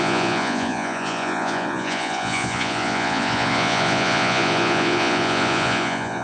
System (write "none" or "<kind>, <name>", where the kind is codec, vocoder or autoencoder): vocoder, Vocos